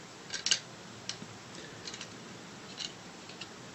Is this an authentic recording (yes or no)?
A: yes